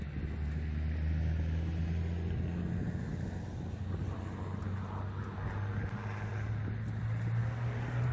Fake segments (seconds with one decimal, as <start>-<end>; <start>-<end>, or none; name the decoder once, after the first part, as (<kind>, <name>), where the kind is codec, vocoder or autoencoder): none